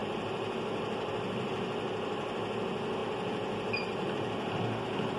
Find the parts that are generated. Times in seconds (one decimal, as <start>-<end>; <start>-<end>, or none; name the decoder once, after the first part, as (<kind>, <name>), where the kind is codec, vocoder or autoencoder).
0.0-1.1 (vocoder, BigVGAN v2)